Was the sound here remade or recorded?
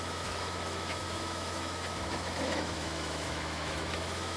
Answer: remade